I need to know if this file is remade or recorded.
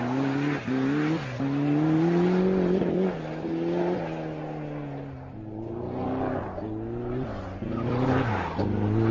recorded